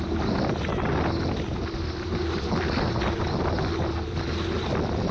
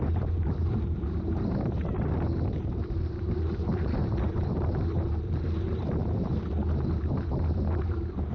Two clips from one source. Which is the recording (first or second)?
first